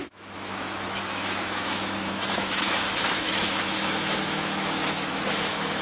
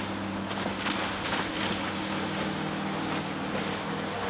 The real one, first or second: second